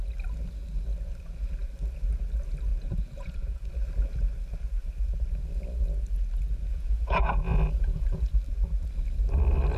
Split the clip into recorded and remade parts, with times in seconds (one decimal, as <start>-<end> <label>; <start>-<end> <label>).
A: 0.0-2.7 recorded; 2.7-3.7 remade; 3.7-6.7 recorded; 6.7-8.3 remade; 8.3-9.8 recorded